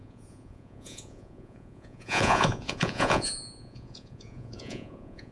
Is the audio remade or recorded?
remade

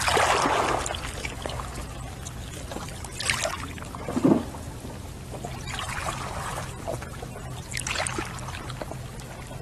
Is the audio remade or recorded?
recorded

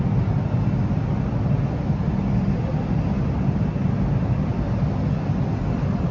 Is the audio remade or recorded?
recorded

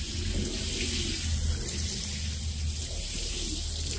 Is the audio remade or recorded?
recorded